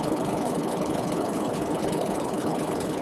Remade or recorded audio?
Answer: remade